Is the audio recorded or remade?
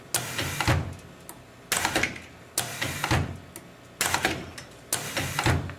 recorded